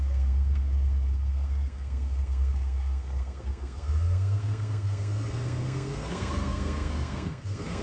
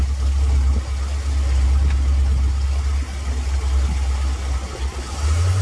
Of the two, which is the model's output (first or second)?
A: first